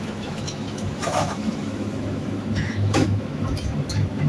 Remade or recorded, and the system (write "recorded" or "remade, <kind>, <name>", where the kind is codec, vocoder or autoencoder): remade, autoencoder, DAC-VAE